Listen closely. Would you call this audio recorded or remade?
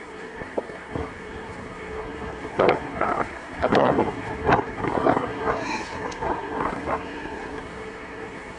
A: remade